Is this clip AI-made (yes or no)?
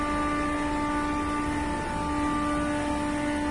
no